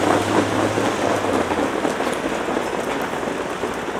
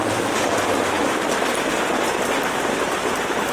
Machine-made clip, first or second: second